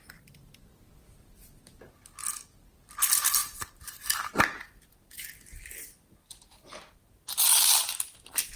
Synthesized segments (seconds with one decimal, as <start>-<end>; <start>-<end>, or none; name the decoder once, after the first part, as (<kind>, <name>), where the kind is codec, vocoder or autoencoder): none